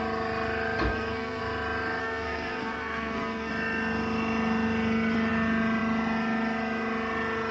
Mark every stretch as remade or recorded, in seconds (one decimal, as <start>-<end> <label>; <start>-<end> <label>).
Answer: 0.0-0.9 recorded; 0.9-1.4 remade; 1.4-2.0 recorded; 2.0-3.5 remade; 3.5-7.5 recorded